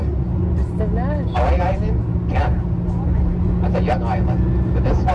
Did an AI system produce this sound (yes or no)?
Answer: no